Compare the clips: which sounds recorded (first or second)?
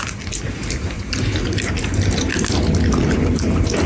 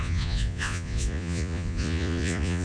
first